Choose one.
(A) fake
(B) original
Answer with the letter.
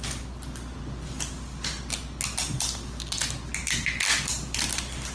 B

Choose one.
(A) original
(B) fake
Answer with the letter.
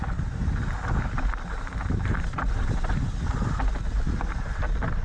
A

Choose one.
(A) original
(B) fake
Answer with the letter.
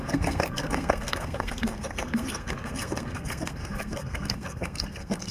B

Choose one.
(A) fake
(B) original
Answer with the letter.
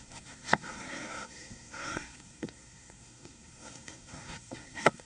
A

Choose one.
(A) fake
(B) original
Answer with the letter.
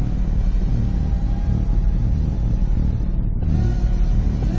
B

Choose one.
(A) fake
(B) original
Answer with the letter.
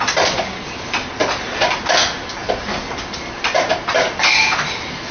B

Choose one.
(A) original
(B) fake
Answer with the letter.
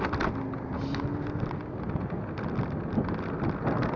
A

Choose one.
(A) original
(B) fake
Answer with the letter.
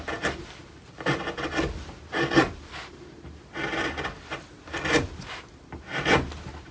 A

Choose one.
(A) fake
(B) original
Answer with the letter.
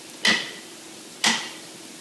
B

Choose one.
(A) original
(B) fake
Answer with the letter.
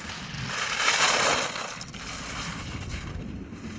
A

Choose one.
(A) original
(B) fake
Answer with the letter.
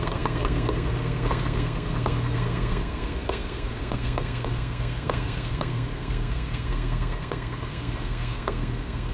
B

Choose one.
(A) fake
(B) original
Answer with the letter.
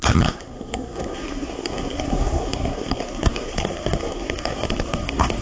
A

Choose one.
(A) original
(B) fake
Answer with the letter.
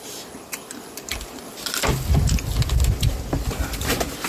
A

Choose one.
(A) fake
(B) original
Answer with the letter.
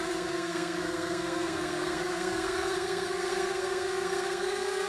A